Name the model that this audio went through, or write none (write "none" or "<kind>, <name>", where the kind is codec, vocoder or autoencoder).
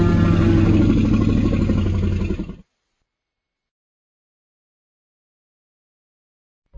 none